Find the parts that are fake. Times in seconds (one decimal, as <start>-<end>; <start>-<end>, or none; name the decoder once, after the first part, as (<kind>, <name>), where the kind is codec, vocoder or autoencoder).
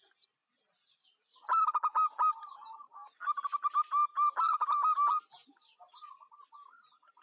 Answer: none